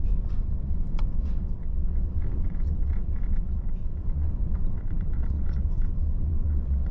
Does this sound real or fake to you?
fake